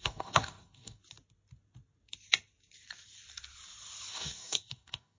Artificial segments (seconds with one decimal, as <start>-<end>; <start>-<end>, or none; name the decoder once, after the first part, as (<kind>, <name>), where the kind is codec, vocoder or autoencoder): 0.0-1.0 (codec, DAC); 4.1-5.2